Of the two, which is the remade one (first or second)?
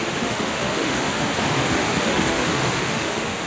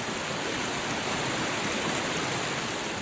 first